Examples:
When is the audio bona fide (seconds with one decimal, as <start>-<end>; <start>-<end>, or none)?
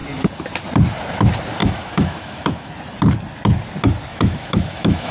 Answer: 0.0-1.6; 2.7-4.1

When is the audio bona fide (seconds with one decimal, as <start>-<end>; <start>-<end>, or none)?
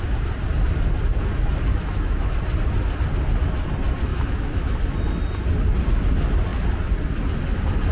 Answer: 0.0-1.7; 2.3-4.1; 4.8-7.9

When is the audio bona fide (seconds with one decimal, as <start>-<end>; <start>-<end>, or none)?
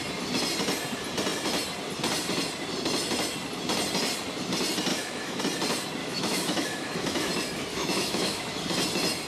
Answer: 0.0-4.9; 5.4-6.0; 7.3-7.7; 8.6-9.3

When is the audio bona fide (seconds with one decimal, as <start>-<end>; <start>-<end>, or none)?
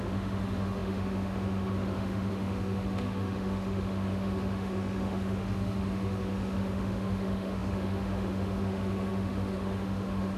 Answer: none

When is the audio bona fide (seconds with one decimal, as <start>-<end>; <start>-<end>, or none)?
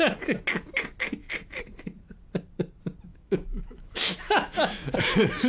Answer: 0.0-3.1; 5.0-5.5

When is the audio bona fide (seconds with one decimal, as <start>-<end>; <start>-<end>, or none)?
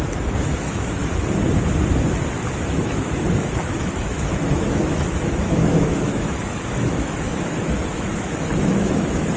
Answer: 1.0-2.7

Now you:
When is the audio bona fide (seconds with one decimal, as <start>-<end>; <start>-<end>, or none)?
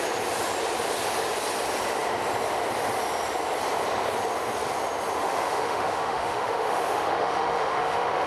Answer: 0.0-5.2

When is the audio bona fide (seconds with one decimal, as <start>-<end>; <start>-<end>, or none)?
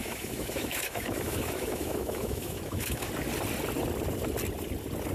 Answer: 3.1-5.1